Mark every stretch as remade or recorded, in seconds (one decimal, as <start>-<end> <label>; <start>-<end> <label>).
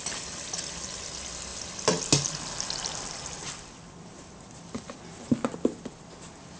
0.0-6.6 recorded